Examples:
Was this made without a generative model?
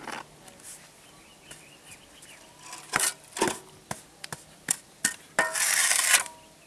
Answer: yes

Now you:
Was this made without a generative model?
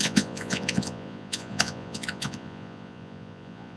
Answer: no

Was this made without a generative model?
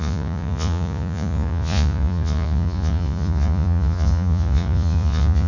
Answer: no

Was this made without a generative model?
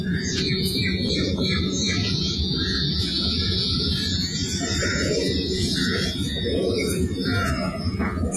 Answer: no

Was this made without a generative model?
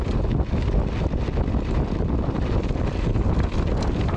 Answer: yes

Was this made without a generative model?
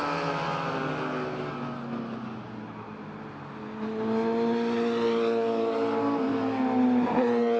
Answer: yes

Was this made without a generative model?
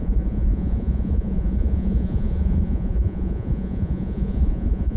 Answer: no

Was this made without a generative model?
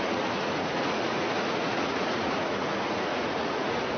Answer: no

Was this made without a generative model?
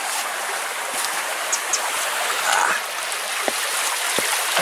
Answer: yes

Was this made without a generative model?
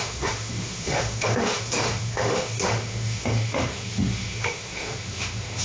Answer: no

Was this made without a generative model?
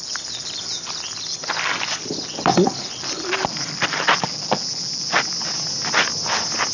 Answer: yes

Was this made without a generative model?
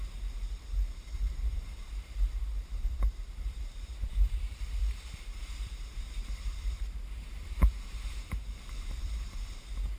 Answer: no